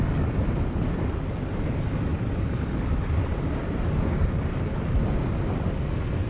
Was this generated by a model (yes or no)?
no